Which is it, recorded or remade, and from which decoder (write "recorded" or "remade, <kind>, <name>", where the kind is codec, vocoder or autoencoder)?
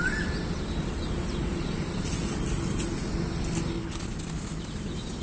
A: recorded